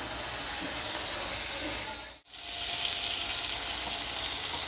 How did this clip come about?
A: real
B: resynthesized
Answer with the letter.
A